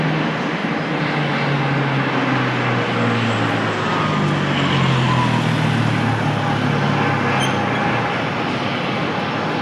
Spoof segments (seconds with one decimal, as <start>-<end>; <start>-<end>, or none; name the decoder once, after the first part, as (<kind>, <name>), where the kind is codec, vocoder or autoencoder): none